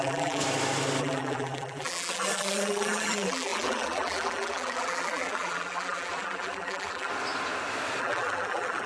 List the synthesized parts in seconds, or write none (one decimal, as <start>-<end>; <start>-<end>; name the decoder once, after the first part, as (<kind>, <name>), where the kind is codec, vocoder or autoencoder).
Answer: 0.0-0.4 (vocoder, BigVGAN v2); 1.0-7.1; 8.0-8.9